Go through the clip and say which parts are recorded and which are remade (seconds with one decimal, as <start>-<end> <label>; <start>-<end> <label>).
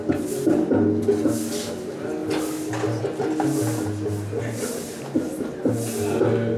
0.0-6.6 recorded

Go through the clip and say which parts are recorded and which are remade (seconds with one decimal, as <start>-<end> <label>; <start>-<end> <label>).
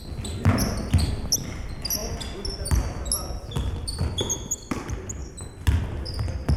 0.0-6.6 recorded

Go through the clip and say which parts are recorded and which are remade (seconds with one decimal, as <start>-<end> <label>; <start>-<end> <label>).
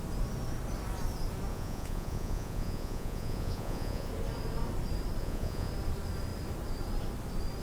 0.0-1.5 recorded; 1.5-4.1 remade; 4.1-5.2 recorded; 5.2-5.7 remade; 5.7-7.6 recorded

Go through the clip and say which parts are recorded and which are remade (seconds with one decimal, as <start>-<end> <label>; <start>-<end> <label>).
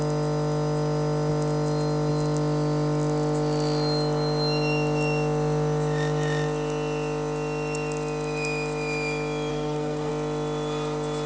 0.0-9.5 recorded; 9.5-10.1 remade; 10.1-11.3 recorded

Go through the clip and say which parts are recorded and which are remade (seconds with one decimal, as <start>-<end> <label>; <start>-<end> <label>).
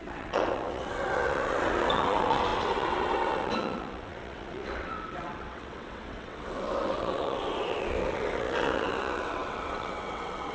0.0-10.5 remade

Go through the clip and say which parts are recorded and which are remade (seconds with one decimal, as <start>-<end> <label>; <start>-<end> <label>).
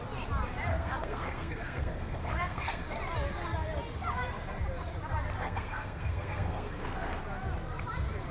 0.0-0.7 recorded; 0.7-2.8 remade; 2.8-5.4 recorded; 5.4-7.2 remade; 7.2-8.3 recorded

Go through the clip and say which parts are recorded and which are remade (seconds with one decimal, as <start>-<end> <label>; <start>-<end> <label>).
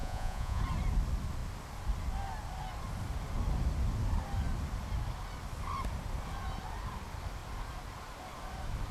0.0-0.6 remade; 0.6-8.9 recorded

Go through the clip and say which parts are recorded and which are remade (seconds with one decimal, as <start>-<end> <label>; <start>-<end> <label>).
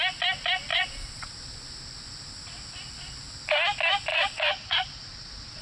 0.0-0.7 recorded; 0.7-1.3 remade; 1.3-4.1 recorded; 4.1-5.6 remade